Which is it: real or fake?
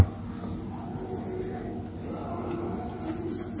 real